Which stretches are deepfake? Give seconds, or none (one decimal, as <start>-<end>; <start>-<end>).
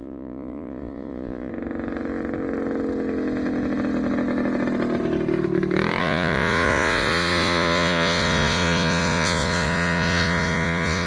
0.0-1.5; 6.0-11.1